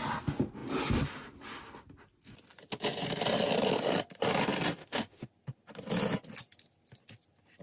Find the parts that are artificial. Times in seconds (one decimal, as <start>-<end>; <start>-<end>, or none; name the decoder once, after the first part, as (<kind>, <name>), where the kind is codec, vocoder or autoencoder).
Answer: 4.8-5.3 (autoencoder, DAC-VAE)